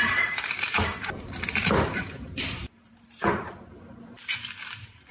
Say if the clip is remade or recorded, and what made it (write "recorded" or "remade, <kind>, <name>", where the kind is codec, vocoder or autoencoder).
remade, vocoder, BigVGAN v2